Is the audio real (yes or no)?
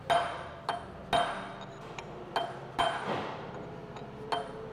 yes